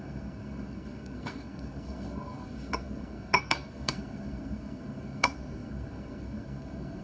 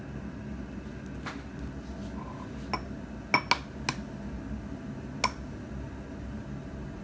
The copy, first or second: first